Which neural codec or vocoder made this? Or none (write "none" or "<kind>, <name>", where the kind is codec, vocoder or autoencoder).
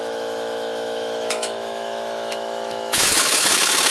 autoencoder, DAC-VAE